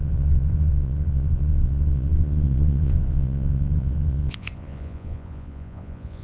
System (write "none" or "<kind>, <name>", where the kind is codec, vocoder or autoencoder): vocoder, Vocos